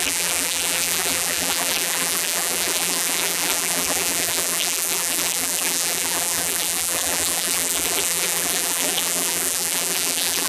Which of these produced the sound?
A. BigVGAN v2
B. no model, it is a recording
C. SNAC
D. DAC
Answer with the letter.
A